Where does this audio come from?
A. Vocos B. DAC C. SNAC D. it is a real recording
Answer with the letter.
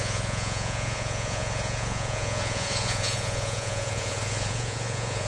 A